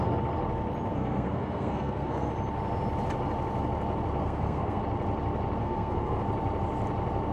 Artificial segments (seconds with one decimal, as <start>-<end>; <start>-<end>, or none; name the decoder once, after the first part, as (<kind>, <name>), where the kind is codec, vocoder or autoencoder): 0.9-2.3 (codec, SNAC); 4.2-4.8; 5.6-6.2